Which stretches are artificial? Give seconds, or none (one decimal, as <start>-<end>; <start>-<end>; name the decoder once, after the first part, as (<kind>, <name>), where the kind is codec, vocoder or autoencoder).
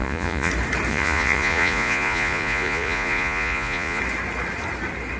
0.0-0.5 (vocoder, Vocos); 0.9-4.0